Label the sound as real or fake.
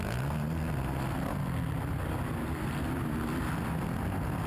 real